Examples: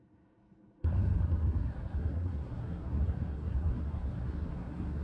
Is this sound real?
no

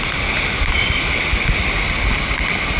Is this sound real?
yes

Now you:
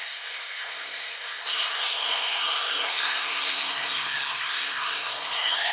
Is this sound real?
no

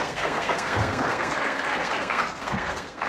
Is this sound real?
no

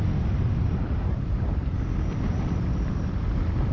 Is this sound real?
yes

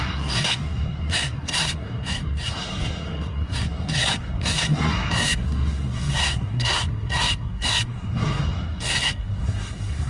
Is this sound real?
no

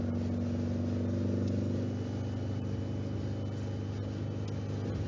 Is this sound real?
yes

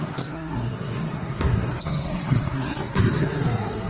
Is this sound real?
no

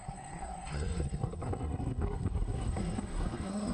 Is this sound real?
no